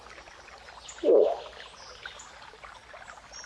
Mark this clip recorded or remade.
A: recorded